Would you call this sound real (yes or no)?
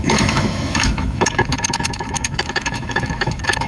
no